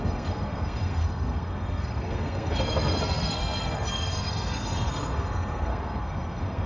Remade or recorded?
remade